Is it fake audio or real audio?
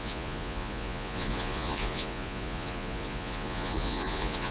fake